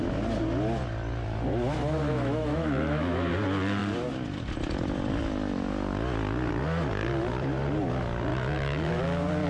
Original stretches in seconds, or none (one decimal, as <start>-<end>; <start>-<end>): 0.0-2.1; 3.3-8.3; 9.0-9.5